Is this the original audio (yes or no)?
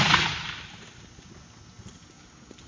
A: yes